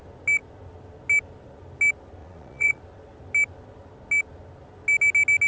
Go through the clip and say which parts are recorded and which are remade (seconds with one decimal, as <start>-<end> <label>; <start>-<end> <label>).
0.0-2.2 recorded; 2.2-2.8 remade; 2.8-5.5 recorded